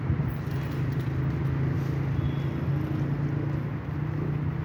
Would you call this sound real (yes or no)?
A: yes